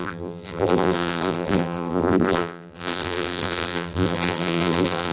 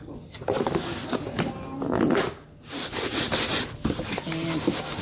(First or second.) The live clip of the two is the second